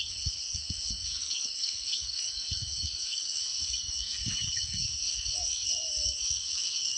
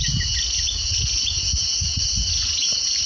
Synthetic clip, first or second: first